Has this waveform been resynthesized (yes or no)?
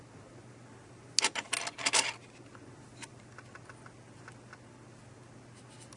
no